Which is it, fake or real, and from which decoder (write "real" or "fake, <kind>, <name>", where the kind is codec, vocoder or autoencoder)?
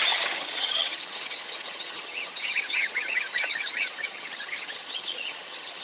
fake, vocoder, HiFi-GAN